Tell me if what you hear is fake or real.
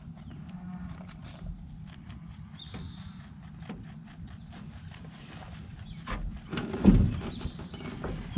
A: real